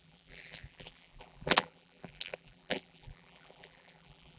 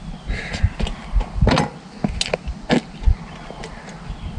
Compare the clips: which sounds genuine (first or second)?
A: second